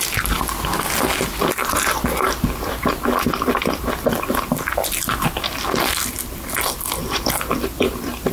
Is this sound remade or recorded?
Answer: recorded